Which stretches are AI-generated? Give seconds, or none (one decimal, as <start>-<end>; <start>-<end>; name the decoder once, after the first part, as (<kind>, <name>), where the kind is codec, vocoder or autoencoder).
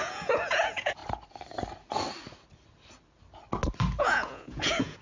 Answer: 0.0-1.0 (vocoder, Vocos); 4.0-5.0